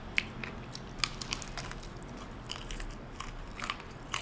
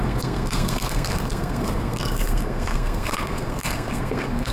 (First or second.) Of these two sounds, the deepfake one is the second